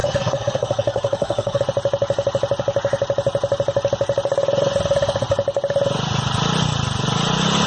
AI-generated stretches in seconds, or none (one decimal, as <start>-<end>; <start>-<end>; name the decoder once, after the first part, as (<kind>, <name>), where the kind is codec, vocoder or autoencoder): 0.0-1.6 (codec, SNAC)